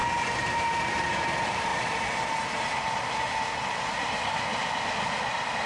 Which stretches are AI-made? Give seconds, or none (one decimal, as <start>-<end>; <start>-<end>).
none